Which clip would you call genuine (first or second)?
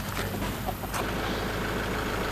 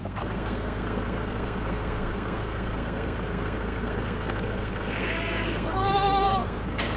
first